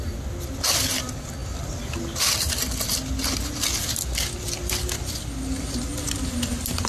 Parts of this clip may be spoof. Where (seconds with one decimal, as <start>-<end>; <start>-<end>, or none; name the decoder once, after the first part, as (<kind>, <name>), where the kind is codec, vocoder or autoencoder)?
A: none